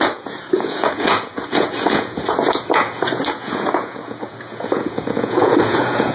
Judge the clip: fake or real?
fake